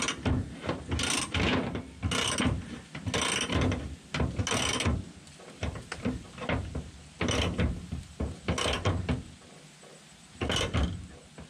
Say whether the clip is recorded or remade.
recorded